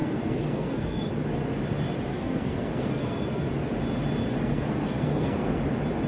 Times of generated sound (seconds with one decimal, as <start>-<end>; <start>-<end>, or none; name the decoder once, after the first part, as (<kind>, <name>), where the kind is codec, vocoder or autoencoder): 0.0-1.1 (codec, SNAC); 2.1-3.5; 4.3-5.6